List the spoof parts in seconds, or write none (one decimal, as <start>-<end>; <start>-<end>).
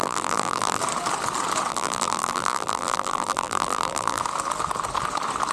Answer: 0.0-0.8; 1.7-4.2